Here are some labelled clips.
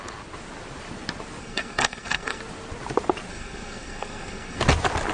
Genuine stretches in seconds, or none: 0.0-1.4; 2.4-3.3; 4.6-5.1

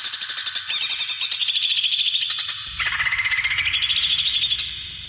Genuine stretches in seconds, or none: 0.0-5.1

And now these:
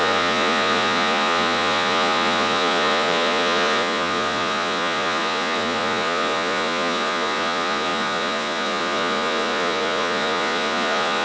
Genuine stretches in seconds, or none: none

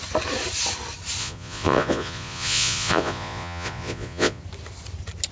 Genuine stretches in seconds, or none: 0.0-1.2; 4.4-5.3